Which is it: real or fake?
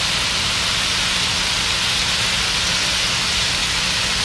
real